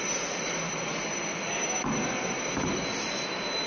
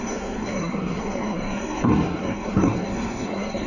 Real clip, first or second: first